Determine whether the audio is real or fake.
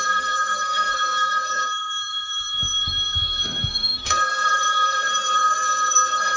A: fake